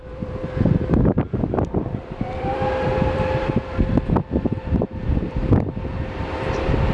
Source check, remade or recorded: remade